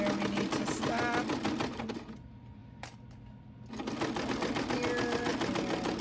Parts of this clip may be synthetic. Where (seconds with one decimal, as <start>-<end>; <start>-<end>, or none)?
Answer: none